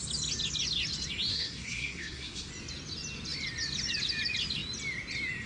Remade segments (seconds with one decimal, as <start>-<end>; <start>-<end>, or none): 1.3-2.5

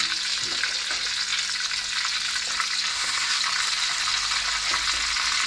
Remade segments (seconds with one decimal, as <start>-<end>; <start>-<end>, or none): 2.9-3.4

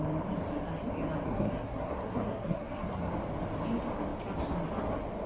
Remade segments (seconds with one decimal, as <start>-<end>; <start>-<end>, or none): 1.3-3.1

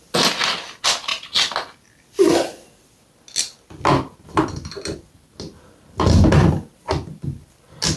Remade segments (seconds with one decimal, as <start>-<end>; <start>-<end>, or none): none

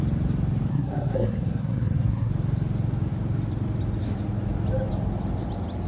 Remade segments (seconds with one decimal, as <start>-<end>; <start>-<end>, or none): 0.7-2.3

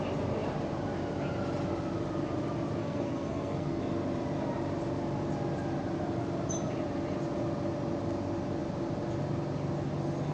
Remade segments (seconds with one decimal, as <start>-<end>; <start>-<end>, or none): 2.8-3.8